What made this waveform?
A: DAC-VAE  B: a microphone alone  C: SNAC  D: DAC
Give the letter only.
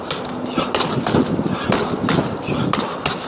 B